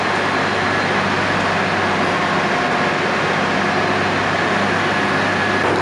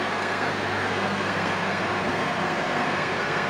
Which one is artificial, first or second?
second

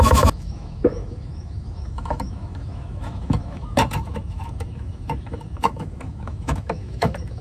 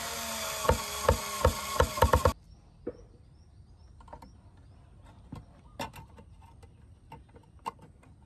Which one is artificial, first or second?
first